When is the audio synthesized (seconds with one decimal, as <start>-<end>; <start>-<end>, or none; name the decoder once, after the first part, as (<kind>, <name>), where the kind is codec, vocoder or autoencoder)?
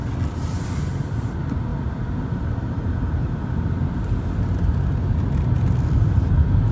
none